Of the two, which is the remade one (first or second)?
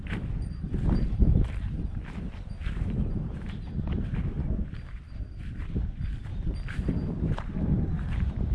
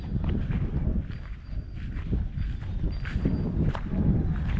first